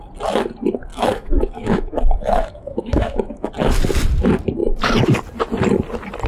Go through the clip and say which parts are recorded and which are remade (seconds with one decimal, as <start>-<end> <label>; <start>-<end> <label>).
0.0-0.9 recorded; 0.9-3.5 remade; 3.5-6.3 recorded